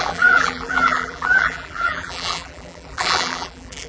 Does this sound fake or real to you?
fake